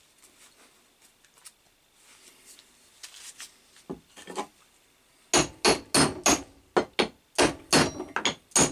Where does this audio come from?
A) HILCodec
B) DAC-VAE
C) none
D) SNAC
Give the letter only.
C